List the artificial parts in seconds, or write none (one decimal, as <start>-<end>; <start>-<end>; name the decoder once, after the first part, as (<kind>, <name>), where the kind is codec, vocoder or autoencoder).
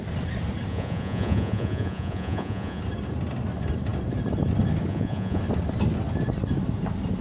0.7-2.8 (vocoder, Vocos); 4.9-5.4